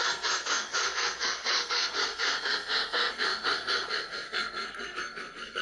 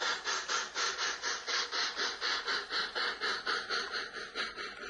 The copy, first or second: first